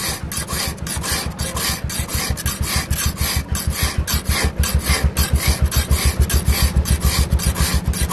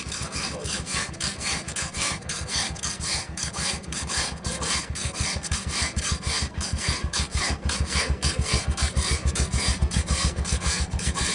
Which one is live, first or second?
first